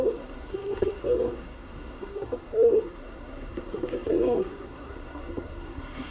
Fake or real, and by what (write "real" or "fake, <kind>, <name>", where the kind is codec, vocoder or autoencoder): fake, codec, SNAC